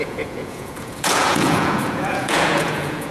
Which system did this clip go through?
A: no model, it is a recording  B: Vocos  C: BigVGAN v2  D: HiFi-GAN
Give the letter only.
B